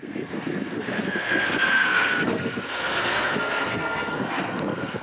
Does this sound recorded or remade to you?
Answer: remade